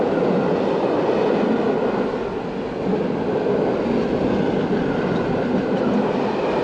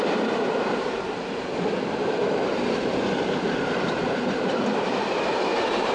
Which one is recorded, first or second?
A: first